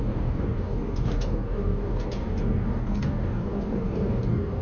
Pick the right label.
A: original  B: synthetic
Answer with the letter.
B